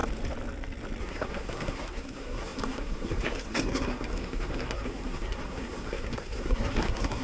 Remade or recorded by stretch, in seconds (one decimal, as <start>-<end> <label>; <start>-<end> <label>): 0.0-1.0 recorded; 1.0-7.2 remade